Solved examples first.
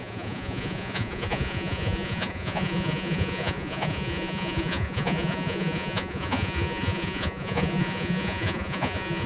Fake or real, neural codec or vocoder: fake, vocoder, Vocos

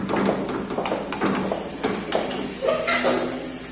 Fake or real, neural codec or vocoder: real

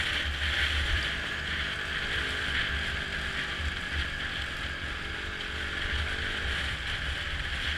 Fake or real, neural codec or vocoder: real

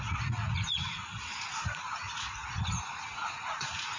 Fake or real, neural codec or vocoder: fake, vocoder, Vocos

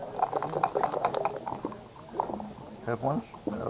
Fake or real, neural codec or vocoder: real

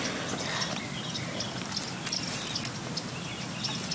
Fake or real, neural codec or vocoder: real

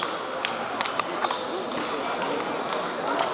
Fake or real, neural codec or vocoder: real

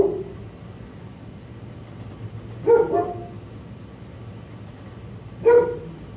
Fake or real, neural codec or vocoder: real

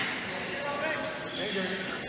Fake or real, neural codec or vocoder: real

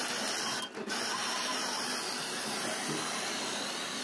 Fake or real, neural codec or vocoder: real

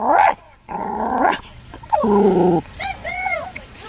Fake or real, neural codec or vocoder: fake, vocoder, Vocos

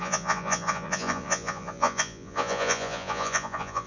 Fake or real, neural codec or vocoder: fake, vocoder, Vocos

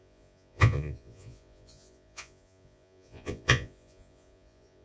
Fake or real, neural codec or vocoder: fake, vocoder, Vocos